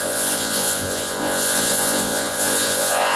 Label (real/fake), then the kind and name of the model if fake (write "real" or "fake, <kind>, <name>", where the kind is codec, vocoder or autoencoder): fake, vocoder, Vocos